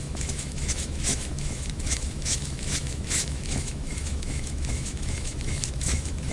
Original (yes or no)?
no